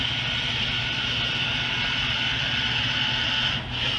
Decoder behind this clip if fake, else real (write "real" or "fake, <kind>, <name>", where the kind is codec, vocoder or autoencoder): real